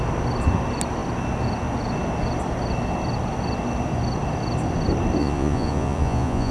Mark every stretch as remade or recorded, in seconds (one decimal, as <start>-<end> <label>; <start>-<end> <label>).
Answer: 0.0-5.2 recorded; 5.2-6.5 remade